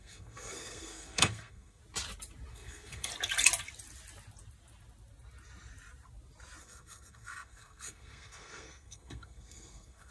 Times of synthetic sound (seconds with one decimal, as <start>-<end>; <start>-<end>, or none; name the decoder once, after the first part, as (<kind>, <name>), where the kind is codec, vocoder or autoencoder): 0.0-1.8 (codec, SNAC); 2.5-3.1; 6.6-10.1

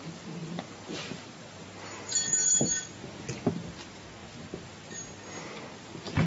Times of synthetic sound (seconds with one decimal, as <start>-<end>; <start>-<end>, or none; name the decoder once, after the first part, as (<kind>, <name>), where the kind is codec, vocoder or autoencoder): none